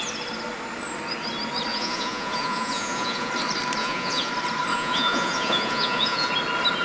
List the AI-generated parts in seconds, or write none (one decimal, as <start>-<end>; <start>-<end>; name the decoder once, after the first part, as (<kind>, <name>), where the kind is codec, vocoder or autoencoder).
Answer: 1.7-3.3 (vocoder, Vocos); 3.8-4.3; 4.7-6.3